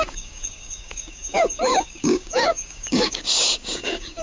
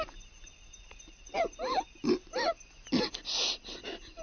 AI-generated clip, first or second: first